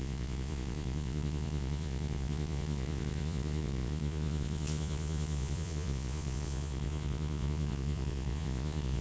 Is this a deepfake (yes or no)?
yes